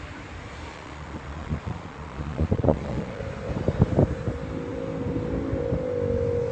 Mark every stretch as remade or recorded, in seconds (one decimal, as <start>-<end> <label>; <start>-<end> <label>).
0.0-0.7 recorded; 0.7-3.2 remade; 3.2-6.5 recorded